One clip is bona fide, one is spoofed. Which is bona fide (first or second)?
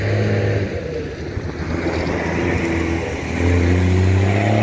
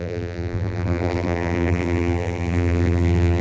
first